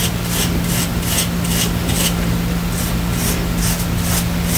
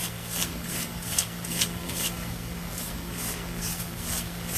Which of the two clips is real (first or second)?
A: first